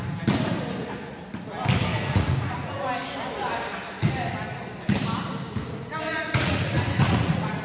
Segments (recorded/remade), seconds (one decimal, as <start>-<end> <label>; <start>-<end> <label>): 0.0-1.9 recorded; 1.9-2.8 remade; 2.8-6.1 recorded; 6.1-7.6 remade